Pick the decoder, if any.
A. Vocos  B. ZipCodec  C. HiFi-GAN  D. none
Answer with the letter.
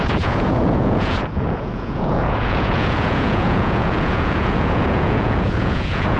A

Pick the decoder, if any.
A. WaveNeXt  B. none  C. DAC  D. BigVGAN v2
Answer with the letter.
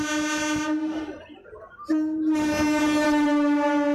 B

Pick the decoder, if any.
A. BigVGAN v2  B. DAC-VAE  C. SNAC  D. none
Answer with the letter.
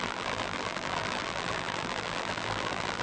A